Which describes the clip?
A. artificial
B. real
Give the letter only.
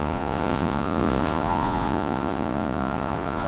A